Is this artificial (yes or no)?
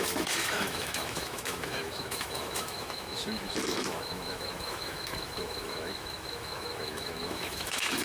yes